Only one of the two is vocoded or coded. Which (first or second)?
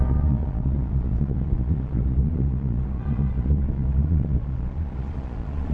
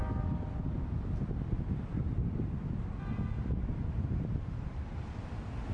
first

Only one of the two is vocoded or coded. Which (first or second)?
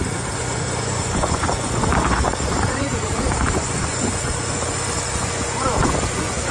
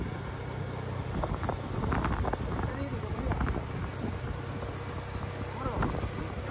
first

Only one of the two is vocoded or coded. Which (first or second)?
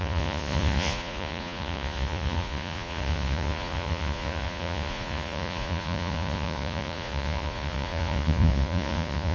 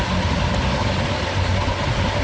first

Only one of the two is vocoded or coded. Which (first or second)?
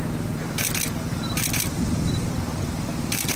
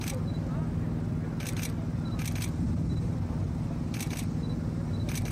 first